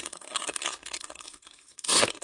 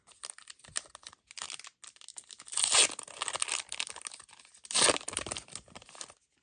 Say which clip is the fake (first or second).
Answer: first